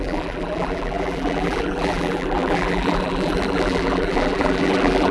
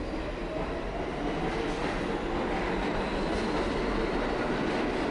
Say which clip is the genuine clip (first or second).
second